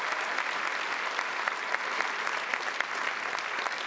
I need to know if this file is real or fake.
real